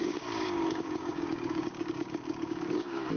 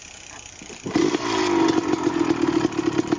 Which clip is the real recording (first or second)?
second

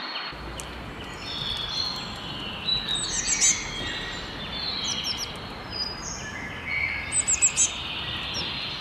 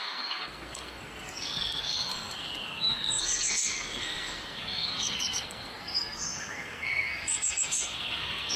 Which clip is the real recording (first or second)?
first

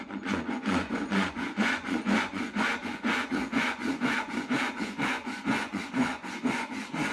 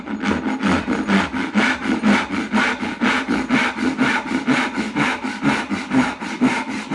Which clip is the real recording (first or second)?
second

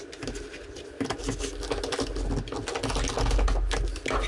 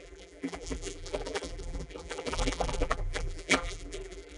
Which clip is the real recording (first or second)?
first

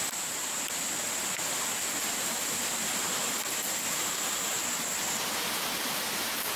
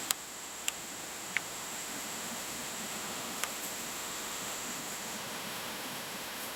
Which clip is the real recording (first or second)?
first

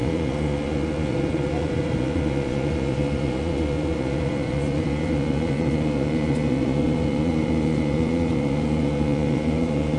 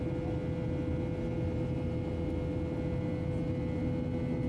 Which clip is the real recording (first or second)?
second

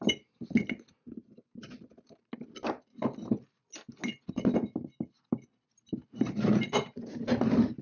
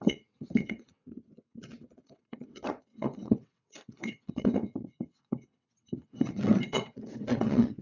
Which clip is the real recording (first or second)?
first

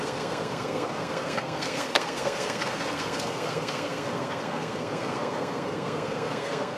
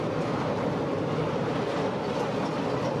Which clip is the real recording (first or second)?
second